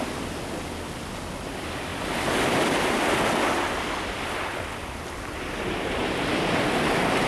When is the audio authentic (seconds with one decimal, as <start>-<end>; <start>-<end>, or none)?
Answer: 0.0-7.3